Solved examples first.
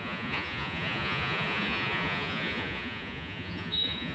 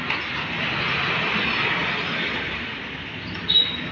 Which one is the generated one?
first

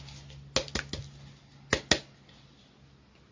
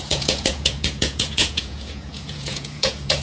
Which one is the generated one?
second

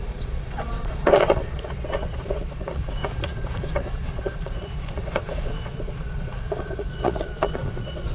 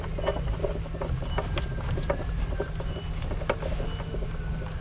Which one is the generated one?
first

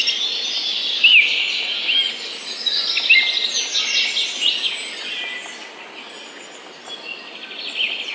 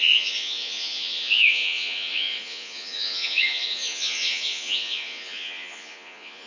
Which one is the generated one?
second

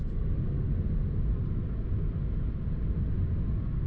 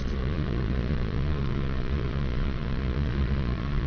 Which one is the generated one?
second